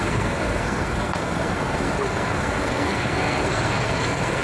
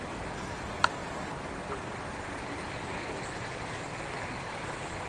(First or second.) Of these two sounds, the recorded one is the second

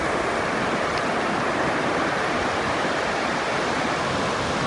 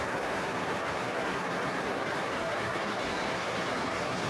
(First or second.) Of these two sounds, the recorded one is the first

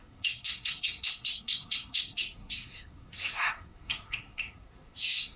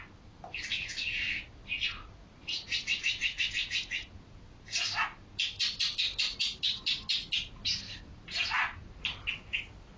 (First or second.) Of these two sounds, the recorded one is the second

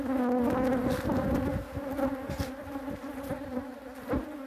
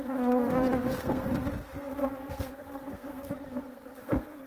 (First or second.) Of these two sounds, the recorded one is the first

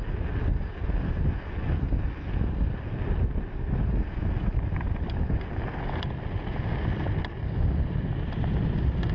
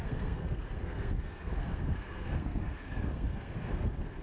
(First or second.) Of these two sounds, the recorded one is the first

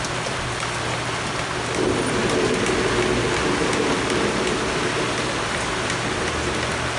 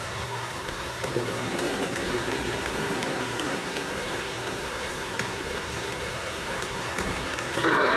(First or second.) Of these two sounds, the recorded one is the first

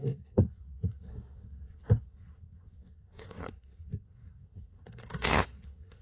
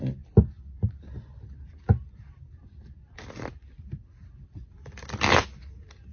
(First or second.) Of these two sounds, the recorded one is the second